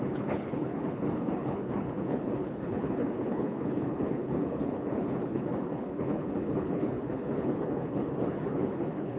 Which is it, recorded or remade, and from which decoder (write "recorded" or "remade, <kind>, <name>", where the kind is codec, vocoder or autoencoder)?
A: remade, codec, HILCodec